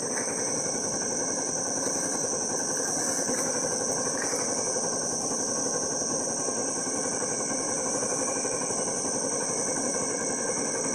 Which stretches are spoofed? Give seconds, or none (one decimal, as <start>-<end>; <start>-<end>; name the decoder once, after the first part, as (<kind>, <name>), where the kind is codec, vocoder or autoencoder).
none